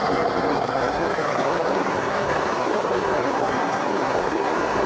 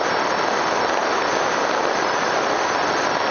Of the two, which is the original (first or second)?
second